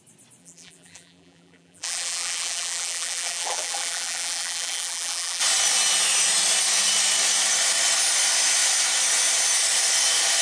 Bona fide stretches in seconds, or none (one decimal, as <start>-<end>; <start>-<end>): 0.0-0.4; 5.4-10.4